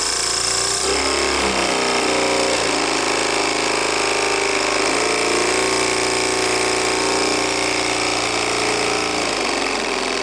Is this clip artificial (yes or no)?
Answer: no